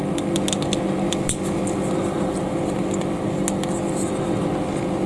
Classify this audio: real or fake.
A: real